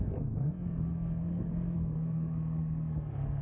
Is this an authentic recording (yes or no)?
no